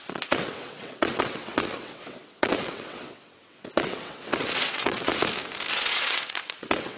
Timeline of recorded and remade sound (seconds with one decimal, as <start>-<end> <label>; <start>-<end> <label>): 0.0-5.1 remade; 5.1-5.7 recorded; 5.7-7.0 remade